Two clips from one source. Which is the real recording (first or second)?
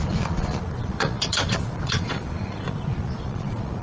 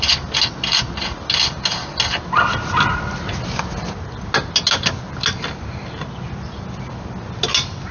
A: second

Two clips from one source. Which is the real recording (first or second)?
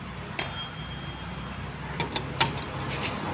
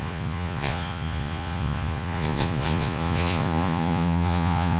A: first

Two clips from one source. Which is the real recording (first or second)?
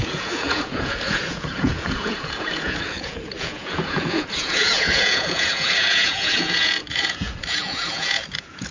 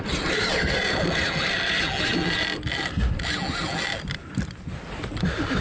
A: second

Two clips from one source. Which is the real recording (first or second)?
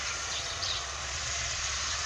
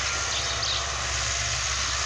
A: second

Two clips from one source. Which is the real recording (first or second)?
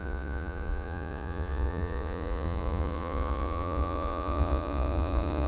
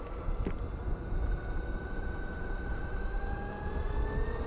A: second